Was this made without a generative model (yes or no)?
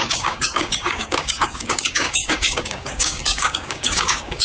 no